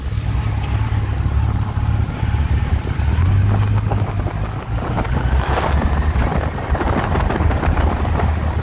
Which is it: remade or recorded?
recorded